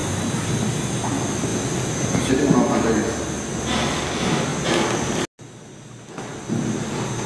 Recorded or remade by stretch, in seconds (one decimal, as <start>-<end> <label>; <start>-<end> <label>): 0.0-0.8 remade; 0.8-4.5 recorded; 4.5-5.1 remade; 5.1-7.3 recorded